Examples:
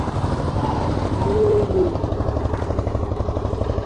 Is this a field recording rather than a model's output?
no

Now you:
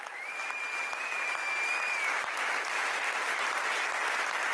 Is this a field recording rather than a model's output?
yes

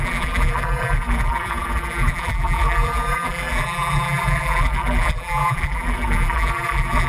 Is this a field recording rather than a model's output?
no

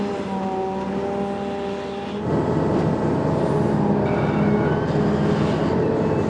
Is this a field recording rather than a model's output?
yes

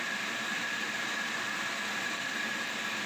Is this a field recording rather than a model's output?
no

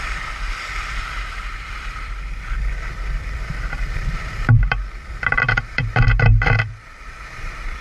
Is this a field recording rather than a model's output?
no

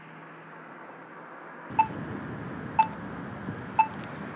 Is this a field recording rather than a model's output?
yes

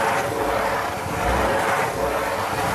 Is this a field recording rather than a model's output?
yes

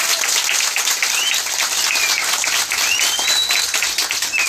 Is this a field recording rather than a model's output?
yes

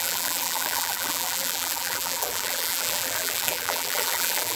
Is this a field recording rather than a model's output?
no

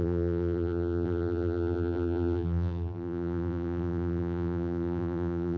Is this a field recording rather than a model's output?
no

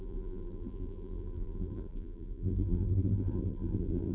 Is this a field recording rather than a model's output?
no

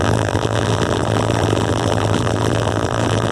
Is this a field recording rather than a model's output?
no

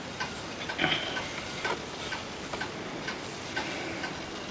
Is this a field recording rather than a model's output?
yes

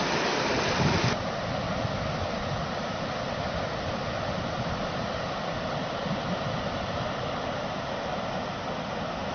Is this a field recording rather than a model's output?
yes